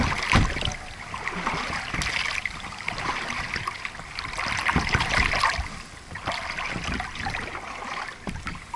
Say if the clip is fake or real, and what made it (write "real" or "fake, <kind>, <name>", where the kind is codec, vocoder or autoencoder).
real